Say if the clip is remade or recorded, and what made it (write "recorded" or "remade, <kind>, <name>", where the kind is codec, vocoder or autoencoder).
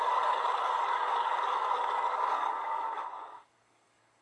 remade, codec, DAC